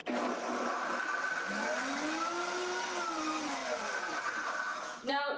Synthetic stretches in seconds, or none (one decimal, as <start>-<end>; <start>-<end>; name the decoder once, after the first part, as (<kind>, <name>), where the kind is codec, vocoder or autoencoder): 4.7-5.4 (vocoder, Vocos)